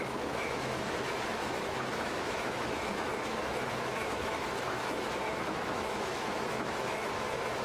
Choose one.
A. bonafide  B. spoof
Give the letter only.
B